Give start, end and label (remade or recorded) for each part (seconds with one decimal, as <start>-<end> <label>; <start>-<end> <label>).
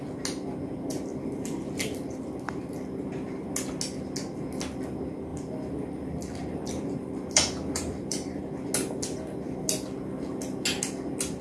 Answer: 0.0-1.1 recorded; 1.1-3.1 remade; 3.1-5.3 recorded; 5.3-8.4 remade; 8.4-11.4 recorded